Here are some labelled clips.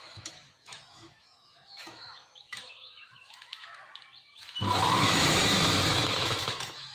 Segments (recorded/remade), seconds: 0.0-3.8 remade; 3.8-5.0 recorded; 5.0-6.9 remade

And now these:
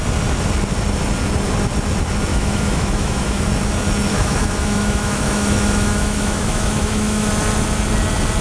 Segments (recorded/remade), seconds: 0.0-2.3 recorded; 2.3-3.5 remade; 3.5-4.1 recorded; 4.1-7.3 remade; 7.3-8.4 recorded

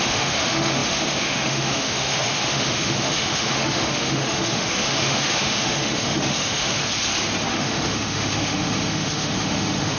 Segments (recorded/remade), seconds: 0.0-6.8 remade; 6.8-7.5 recorded; 7.5-10.0 remade